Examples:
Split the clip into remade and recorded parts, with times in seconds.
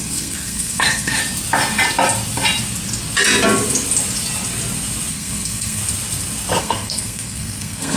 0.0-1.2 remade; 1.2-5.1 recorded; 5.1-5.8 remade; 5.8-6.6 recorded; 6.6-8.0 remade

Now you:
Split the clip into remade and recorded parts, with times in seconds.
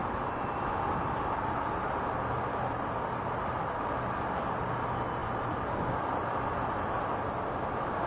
0.0-8.1 remade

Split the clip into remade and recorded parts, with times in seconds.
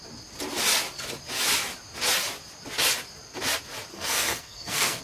0.0-3.9 recorded; 3.9-5.0 remade